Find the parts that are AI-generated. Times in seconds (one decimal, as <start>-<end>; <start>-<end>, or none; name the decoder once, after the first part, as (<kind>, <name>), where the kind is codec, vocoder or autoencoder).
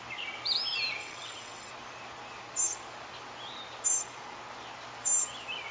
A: 1.0-1.7 (vocoder, WaveNeXt)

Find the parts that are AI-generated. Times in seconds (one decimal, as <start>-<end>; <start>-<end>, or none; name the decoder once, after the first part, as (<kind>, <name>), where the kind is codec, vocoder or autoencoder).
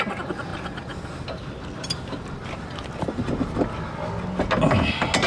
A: none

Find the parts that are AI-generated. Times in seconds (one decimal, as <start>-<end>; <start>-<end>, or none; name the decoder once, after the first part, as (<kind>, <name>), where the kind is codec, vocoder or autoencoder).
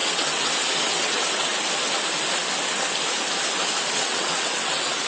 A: 0.0-1.5 (vocoder, WaveNeXt); 3.9-5.1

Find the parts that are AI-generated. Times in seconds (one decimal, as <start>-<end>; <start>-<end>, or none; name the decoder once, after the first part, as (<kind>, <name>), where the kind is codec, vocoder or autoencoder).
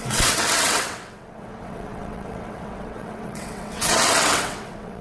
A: 0.0-5.0 (vocoder, WaveNeXt)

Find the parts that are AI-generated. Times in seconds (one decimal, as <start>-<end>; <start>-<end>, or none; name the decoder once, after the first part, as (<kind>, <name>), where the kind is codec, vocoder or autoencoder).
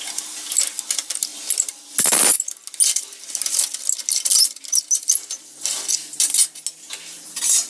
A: none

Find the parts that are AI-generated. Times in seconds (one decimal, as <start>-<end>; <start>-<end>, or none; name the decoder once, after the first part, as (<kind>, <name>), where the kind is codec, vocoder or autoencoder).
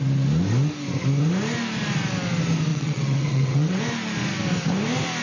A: 2.7-3.8 (vocoder, WaveNeXt)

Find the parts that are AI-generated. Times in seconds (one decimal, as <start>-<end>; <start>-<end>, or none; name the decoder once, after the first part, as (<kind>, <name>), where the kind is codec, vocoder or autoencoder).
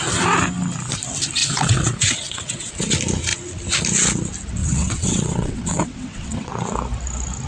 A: 1.4-2.7 (vocoder, WaveNeXt); 4.6-6.5